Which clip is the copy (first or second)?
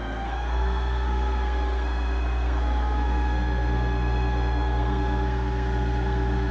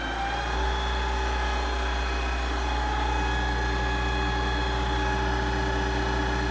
first